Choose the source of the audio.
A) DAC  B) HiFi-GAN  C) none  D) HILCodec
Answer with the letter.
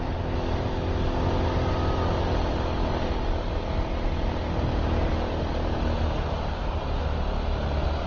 C